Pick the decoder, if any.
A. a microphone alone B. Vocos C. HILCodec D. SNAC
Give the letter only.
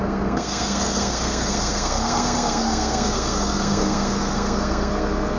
D